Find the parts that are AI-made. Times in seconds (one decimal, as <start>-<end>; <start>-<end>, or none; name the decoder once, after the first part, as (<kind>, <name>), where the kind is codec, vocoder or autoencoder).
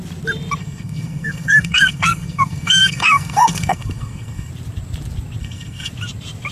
0.6-4.5 (codec, SNAC); 5.4-5.9